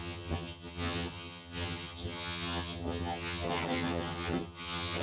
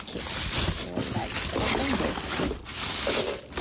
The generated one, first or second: first